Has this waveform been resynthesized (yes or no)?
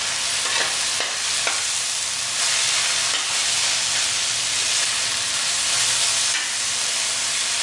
no